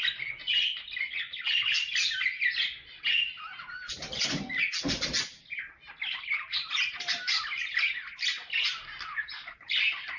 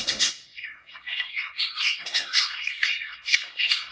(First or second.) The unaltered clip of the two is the first